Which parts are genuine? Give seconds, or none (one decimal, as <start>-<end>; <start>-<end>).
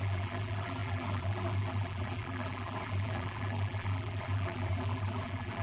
none